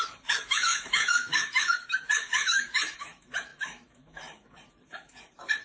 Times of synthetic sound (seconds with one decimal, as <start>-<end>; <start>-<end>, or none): 0.0-5.6